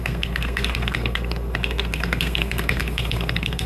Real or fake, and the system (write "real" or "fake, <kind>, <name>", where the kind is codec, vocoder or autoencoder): fake, codec, SNAC